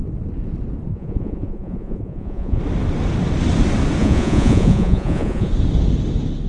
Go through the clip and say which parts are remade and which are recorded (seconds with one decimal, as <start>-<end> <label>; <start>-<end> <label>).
0.0-0.9 recorded; 0.9-2.6 remade; 2.6-4.0 recorded; 4.0-5.5 remade; 5.5-6.5 recorded